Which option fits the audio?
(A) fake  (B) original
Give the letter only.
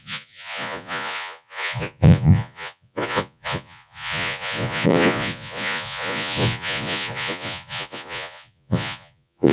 A